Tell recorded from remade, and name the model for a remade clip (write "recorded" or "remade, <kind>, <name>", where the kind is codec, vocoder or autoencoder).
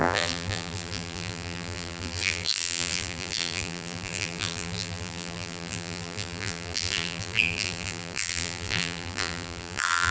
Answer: remade, vocoder, BigVGAN v2